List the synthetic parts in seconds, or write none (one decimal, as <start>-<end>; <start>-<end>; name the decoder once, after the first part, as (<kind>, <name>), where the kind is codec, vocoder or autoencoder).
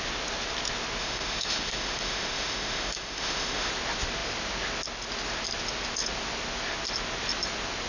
1.0-3.7 (autoencoder, DAC-VAE)